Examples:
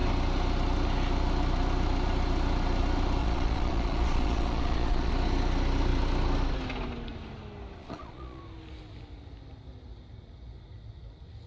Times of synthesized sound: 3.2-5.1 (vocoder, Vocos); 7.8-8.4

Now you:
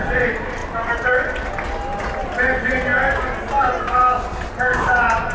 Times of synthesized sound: none